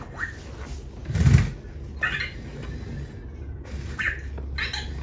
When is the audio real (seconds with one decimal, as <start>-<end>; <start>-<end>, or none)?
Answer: 0.0-5.0